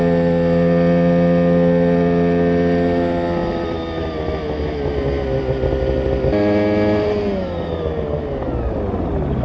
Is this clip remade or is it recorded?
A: recorded